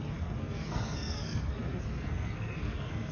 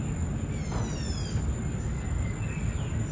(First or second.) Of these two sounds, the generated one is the first